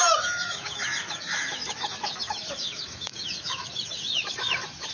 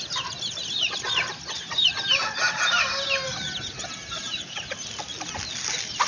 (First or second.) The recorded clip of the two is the second